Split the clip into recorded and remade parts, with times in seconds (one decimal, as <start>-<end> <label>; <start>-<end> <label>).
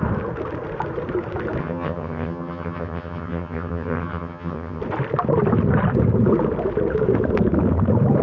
0.0-1.6 recorded; 1.6-4.8 remade; 4.8-8.2 recorded